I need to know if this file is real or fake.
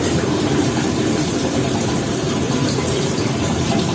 fake